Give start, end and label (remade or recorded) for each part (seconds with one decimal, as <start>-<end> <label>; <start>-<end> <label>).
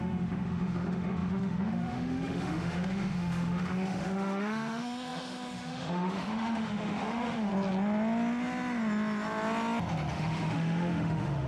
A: 0.0-7.5 remade; 7.5-10.1 recorded; 10.1-11.5 remade